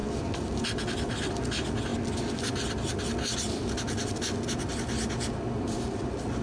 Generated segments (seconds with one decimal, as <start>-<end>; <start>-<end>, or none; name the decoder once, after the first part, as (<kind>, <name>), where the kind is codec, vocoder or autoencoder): none